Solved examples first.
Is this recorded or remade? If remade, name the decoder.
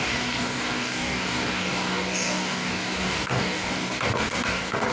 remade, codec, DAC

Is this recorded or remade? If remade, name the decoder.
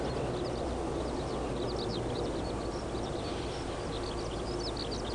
recorded